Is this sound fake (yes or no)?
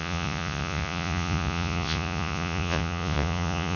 yes